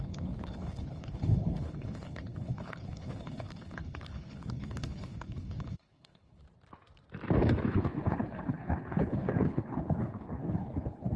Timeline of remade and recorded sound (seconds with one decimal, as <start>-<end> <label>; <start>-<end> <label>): 0.0-6.4 remade; 6.4-7.7 recorded; 7.7-11.2 remade